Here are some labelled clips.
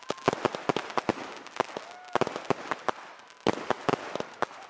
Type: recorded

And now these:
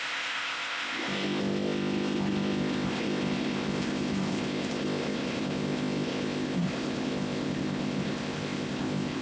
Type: remade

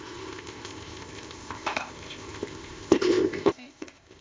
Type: remade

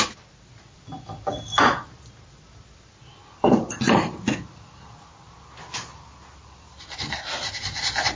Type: recorded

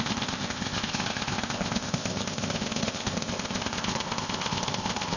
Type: remade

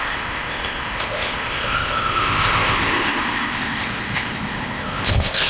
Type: remade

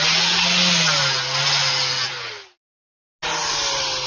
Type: recorded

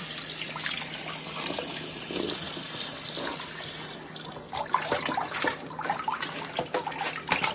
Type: recorded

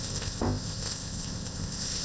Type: remade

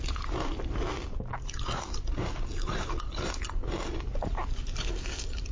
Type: recorded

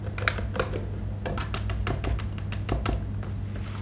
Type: recorded